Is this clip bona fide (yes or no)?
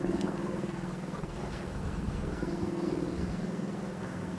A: no